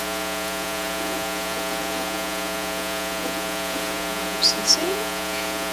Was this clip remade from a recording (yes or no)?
yes